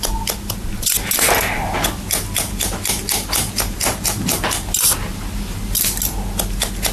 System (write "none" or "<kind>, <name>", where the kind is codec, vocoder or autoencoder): none